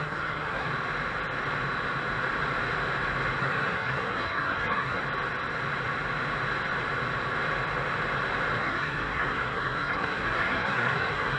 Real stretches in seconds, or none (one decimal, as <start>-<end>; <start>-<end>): 0.7-3.4; 5.0-8.6